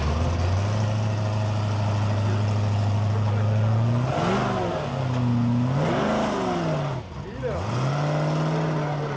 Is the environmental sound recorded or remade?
recorded